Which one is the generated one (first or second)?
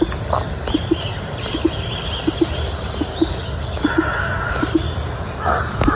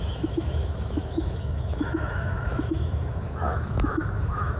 second